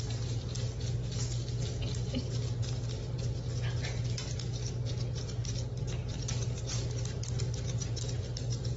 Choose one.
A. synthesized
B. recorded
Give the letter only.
B